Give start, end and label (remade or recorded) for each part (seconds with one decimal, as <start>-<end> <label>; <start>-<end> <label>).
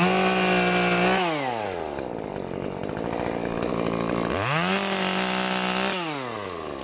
0.0-6.8 recorded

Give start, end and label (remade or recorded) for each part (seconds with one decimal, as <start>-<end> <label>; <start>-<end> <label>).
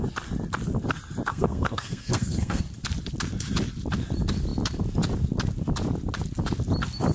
0.0-1.3 recorded; 1.3-2.6 remade; 2.6-7.1 recorded